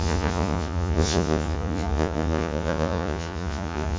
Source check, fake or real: fake